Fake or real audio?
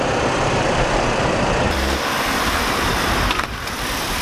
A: fake